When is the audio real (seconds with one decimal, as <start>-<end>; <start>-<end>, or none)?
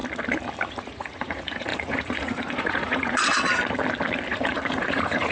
0.0-0.7; 3.3-4.3